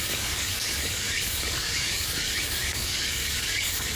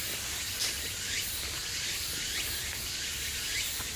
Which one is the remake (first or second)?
first